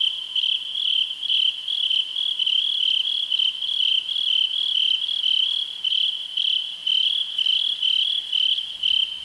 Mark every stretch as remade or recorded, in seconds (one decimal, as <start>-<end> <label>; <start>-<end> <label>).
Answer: 0.0-9.2 recorded